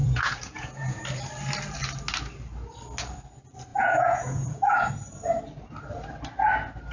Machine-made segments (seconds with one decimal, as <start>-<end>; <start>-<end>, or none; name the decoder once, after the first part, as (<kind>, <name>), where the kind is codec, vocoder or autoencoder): 0.0-1.0 (vocoder, Vocos); 3.7-4.9